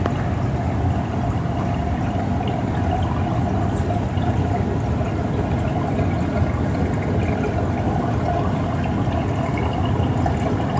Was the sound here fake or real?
real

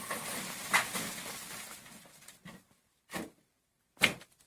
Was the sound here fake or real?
real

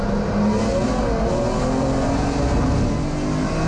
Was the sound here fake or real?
real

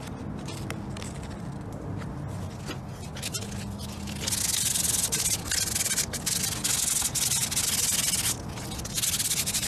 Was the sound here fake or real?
real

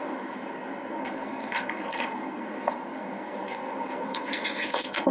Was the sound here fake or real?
fake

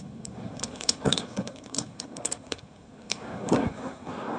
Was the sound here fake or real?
fake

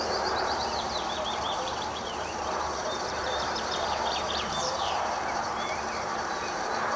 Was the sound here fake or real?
fake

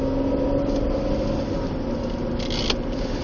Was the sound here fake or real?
real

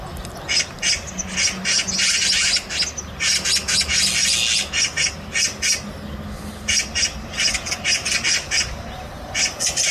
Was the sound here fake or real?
real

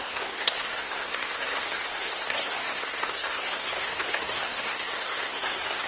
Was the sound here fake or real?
fake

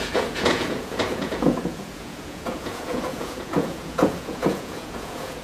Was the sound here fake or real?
fake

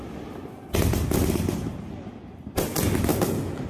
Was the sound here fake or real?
real